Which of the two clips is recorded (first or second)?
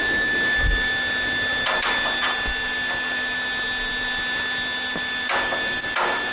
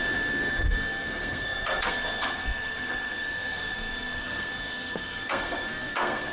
first